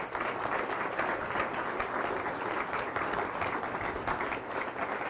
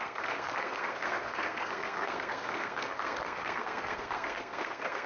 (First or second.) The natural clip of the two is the first